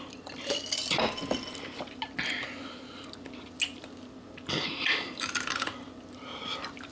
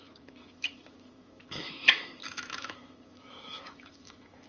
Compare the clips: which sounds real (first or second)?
first